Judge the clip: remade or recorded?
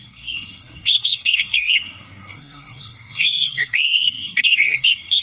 remade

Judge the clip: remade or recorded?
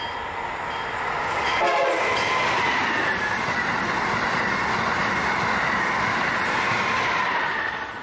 recorded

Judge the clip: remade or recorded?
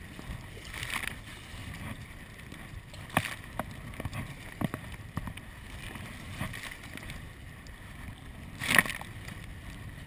recorded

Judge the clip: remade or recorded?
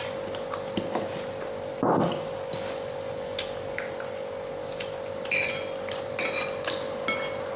recorded